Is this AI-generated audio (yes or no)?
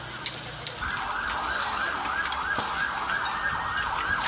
no